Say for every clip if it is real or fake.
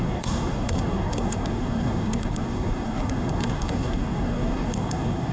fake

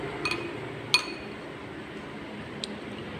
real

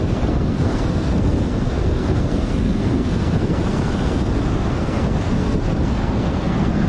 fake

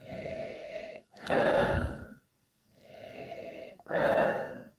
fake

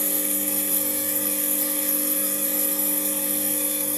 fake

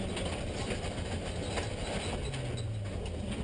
real